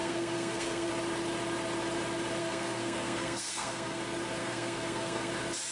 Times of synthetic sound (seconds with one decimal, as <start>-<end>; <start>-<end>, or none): 0.0-0.9; 2.4-4.0; 4.4-5.3